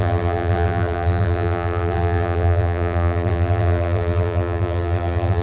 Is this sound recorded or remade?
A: remade